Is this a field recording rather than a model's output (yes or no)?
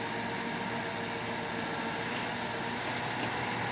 yes